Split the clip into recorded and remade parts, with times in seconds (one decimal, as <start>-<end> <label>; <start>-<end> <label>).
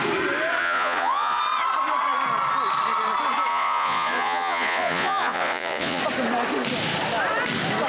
0.0-0.6 recorded; 0.6-1.4 remade; 1.4-3.5 recorded; 3.5-6.0 remade; 6.0-7.9 recorded